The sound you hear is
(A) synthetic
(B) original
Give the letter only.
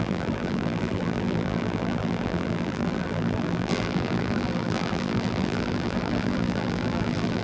A